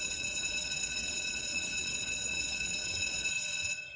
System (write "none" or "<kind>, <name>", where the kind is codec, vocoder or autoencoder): vocoder, Vocos